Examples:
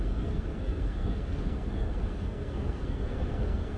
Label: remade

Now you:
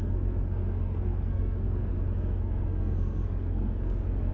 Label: remade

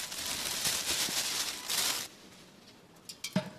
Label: recorded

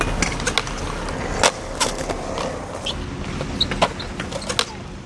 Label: recorded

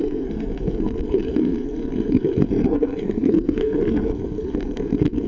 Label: remade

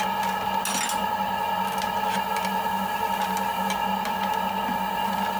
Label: recorded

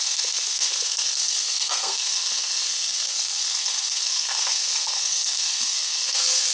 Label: remade